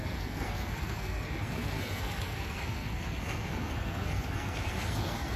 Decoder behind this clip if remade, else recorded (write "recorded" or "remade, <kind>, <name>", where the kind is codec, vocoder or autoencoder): remade, codec, SNAC